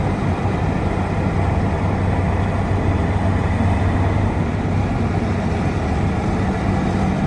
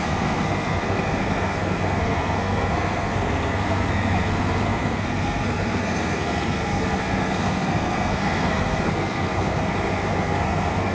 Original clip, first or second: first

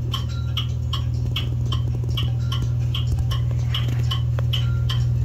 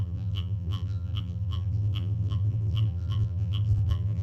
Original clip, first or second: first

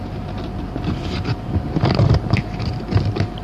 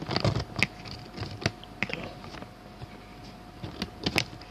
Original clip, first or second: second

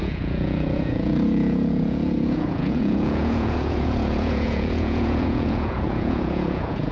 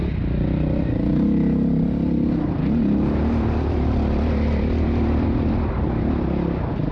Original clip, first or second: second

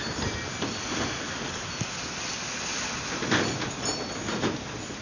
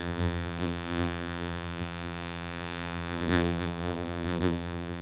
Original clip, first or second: first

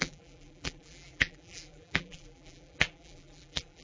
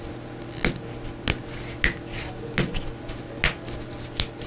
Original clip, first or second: second